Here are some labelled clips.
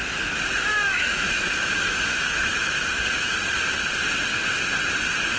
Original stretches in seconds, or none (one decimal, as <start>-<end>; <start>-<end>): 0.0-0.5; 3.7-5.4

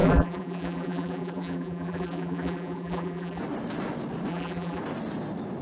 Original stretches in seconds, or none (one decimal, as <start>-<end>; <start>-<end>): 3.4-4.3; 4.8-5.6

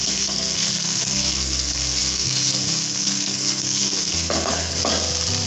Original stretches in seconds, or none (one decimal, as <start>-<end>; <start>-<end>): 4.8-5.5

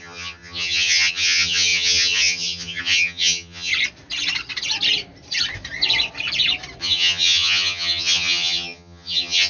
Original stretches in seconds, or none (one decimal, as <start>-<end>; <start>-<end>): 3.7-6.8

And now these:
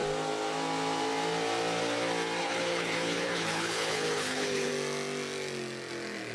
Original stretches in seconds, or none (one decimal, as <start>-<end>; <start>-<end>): 0.0-2.4; 4.7-6.3

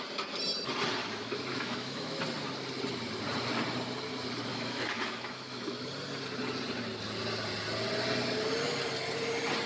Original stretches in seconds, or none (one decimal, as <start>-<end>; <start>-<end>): 0.0-1.0; 2.2-4.5; 5.9-9.7